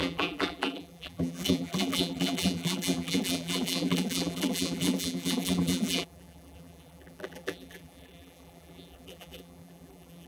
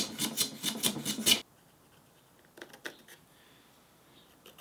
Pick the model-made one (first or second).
first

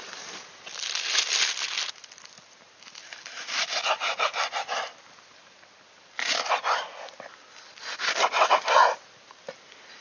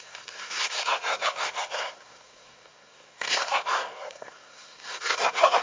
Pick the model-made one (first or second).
second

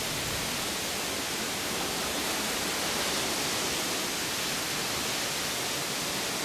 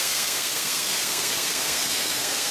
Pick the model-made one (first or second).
second